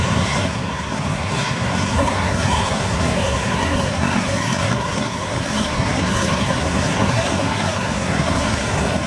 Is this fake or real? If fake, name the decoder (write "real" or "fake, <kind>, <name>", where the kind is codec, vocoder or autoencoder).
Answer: fake, codec, SNAC